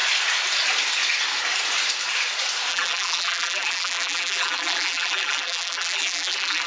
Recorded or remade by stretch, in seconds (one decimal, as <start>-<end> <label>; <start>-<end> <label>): 0.0-2.7 recorded; 2.7-6.7 remade